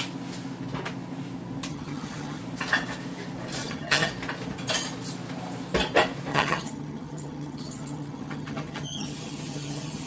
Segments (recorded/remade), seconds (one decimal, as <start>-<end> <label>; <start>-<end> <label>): 0.0-1.7 recorded; 1.7-2.4 remade; 2.4-3.6 recorded; 3.6-4.1 remade; 4.1-6.3 recorded; 6.3-10.1 remade